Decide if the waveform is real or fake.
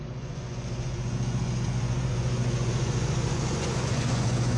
fake